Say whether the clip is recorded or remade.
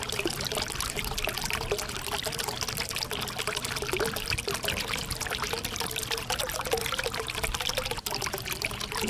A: recorded